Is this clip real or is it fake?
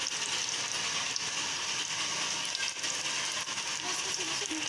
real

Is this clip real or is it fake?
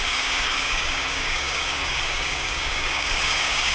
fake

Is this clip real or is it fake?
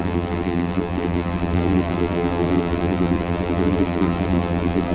fake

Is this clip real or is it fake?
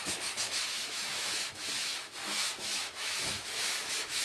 fake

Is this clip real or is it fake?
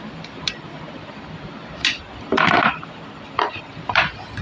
fake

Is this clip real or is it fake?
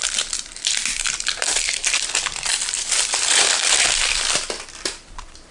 fake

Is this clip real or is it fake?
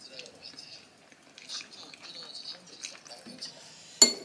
real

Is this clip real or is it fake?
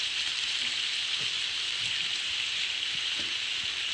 fake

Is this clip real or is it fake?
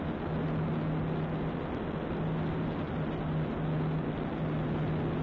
real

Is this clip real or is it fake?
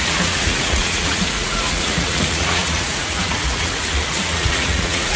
fake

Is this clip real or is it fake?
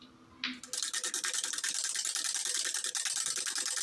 real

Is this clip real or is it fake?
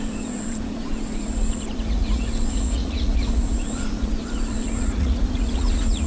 fake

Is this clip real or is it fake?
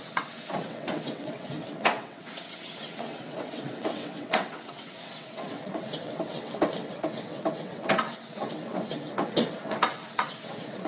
fake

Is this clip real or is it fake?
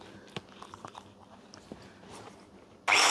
real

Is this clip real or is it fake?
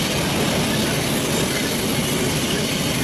real